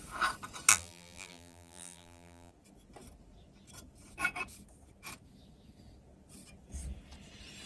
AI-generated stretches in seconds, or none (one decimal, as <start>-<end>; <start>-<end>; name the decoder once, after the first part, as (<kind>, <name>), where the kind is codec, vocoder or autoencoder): 0.7-2.5 (vocoder, BigVGAN v2)

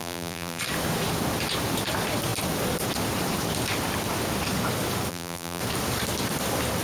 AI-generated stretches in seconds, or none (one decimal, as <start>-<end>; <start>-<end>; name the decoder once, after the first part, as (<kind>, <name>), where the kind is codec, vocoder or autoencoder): 0.0-0.6 (vocoder, BigVGAN v2); 5.1-5.6

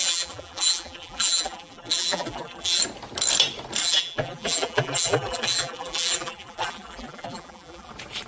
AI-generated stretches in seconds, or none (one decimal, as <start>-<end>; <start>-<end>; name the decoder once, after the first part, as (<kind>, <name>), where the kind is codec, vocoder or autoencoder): 0.0-2.8 (vocoder, BigVGAN v2); 3.8-7.9